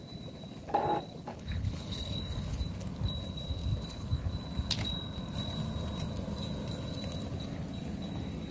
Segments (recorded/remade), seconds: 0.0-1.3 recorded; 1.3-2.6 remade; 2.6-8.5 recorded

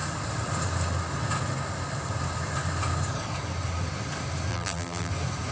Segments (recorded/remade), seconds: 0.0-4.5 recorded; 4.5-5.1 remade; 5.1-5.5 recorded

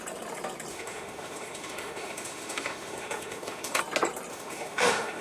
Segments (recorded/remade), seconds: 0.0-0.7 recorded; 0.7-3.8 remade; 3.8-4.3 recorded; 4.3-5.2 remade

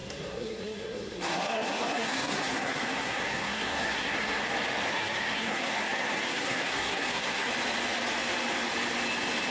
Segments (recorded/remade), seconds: 0.0-4.4 remade; 4.4-4.9 recorded; 4.9-7.5 remade; 7.5-9.5 recorded

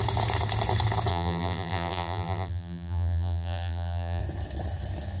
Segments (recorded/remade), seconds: 0.0-1.1 recorded; 1.1-4.2 remade; 4.2-5.2 recorded

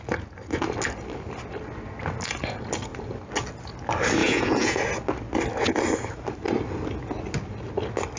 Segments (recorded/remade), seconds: 0.0-4.2 recorded; 4.2-4.8 remade; 4.8-8.2 recorded

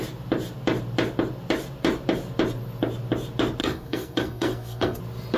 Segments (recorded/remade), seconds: 0.0-3.6 recorded; 3.6-5.0 remade; 5.0-5.4 recorded

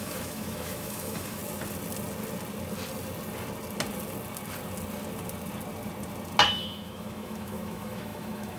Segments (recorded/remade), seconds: 0.0-1.4 remade; 1.4-6.5 recorded; 6.5-8.6 remade